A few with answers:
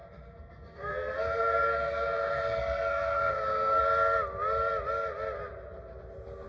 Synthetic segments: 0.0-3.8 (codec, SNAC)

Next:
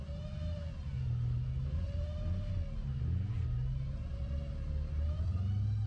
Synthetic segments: none

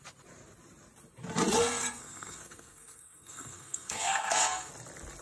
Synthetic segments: 1.6-4.7 (codec, SNAC)

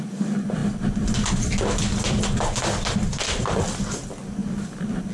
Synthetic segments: none